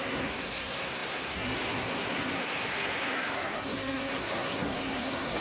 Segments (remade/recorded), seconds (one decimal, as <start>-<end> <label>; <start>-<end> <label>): 0.0-5.4 remade